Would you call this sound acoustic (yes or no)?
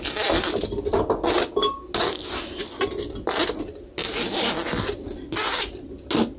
yes